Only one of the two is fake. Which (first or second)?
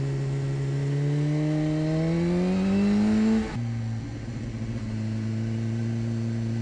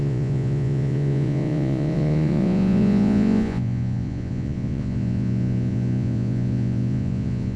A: second